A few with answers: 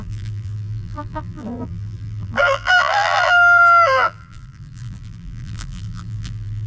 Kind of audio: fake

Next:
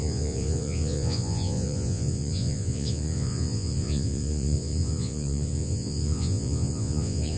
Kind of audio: fake